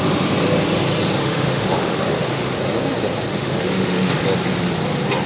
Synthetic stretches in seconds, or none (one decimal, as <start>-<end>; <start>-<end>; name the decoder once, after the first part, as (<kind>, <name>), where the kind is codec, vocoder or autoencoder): 1.2-2.5 (autoencoder, DAC-VAE); 3.3-4.2